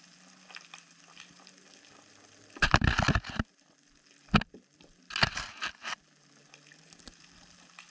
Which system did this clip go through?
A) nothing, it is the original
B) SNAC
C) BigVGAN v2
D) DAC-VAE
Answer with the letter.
A